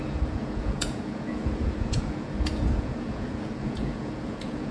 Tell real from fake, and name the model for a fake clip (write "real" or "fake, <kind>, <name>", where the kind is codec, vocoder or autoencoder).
fake, vocoder, Vocos